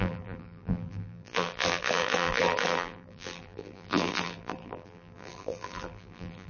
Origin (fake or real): fake